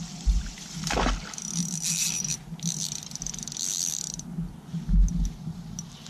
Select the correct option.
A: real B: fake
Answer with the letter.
A